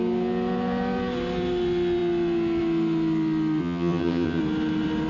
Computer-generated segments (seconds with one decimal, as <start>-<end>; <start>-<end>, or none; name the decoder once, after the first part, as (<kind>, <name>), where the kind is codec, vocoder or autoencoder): 3.6-4.4 (vocoder, HiFi-GAN)